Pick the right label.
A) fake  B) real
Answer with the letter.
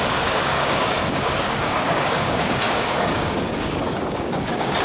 A